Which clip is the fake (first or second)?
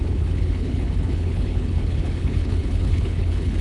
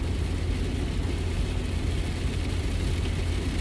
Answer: first